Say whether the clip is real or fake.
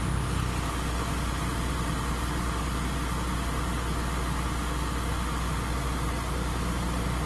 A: real